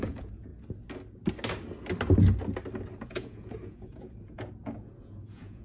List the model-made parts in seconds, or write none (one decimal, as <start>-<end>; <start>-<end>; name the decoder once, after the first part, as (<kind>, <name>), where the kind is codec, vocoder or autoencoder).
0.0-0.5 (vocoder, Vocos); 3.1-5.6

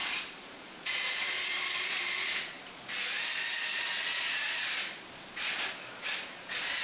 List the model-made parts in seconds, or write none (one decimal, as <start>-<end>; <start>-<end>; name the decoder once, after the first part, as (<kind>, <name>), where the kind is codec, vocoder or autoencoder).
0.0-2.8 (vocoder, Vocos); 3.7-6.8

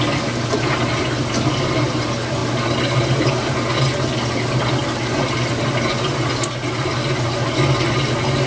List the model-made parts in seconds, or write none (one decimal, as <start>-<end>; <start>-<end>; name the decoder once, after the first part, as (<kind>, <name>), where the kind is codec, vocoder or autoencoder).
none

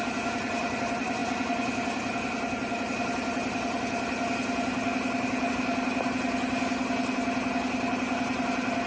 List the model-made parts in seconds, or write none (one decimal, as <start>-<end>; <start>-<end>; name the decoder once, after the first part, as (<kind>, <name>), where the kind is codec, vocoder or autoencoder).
none

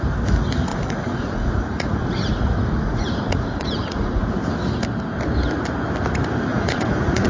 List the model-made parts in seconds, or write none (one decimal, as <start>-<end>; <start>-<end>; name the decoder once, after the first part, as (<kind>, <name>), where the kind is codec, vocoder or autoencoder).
0.7-4.3 (vocoder, Vocos); 6.5-7.3

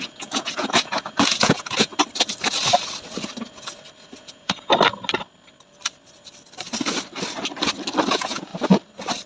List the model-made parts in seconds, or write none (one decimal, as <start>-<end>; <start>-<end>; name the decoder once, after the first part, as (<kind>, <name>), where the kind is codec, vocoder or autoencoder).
0.0-1.9 (vocoder, Vocos); 4.2-4.7; 8.1-8.5

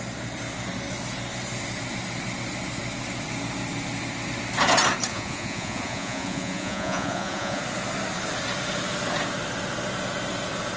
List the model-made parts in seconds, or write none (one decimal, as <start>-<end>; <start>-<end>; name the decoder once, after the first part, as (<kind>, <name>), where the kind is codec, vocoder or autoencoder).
5.1-7.6 (vocoder, Vocos)

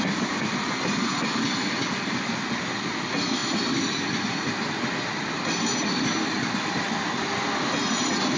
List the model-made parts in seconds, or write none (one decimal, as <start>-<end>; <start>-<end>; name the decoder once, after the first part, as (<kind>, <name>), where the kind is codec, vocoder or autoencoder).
none